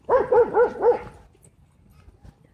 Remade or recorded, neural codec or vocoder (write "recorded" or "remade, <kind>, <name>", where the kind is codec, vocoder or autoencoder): recorded